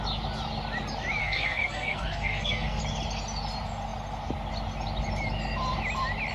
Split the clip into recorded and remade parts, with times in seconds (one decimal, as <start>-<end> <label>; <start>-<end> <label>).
0.0-1.2 recorded; 1.2-2.8 remade; 2.8-6.3 recorded